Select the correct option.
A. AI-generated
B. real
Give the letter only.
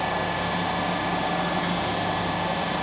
B